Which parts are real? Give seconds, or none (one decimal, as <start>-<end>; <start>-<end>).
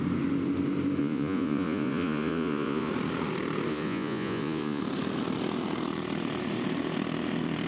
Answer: 0.0-1.0; 2.9-3.7; 4.8-7.7